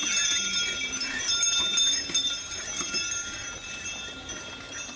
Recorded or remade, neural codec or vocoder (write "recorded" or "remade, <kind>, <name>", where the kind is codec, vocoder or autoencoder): recorded